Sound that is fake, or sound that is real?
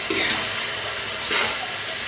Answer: real